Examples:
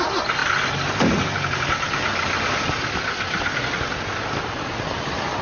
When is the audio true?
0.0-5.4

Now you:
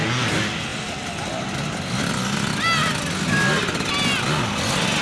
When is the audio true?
0.0-5.0